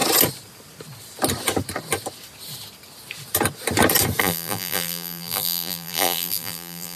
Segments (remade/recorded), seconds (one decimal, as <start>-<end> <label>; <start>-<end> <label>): 0.0-4.2 recorded; 4.2-7.0 remade